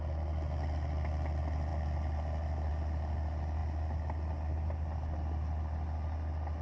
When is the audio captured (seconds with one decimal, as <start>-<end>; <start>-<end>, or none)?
0.0-6.6